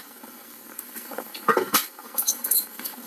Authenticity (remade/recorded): remade